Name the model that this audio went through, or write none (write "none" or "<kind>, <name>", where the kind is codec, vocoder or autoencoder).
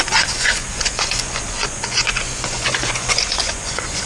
vocoder, Vocos